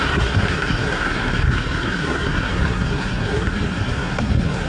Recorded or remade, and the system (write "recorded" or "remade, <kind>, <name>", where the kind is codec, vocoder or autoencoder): remade, codec, SNAC